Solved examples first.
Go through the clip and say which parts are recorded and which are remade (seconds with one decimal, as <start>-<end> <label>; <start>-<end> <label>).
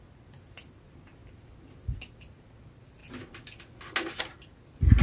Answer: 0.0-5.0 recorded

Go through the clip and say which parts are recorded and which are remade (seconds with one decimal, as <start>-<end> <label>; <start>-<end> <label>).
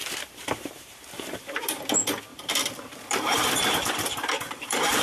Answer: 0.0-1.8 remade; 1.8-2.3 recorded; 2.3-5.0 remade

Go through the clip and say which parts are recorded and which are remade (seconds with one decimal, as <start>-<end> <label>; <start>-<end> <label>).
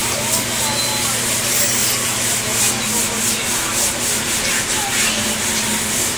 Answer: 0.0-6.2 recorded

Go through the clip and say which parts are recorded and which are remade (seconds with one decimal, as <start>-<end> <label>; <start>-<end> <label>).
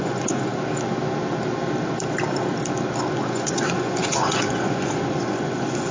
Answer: 0.0-0.5 remade; 0.5-3.1 recorded; 3.1-5.9 remade